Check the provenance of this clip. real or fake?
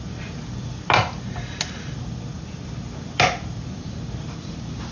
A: real